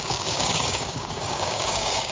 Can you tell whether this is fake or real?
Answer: fake